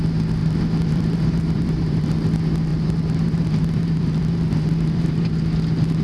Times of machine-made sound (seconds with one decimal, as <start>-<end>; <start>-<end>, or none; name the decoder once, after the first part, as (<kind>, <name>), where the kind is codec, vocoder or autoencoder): 0.4-2.1 (vocoder, BigVGAN v2); 2.7-5.3